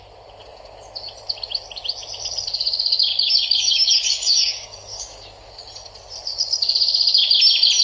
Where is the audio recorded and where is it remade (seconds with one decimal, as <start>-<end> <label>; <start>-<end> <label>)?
0.0-3.1 recorded; 3.1-5.5 remade; 5.5-7.8 recorded